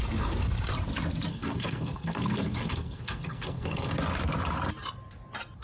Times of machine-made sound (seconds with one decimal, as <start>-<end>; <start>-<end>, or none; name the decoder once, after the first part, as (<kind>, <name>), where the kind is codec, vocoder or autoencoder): 1.3-3.9 (codec, SNAC)